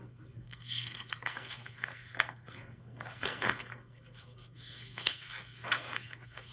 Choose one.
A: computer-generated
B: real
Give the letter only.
A